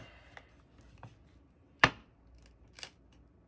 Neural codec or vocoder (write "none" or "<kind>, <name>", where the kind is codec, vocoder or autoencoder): none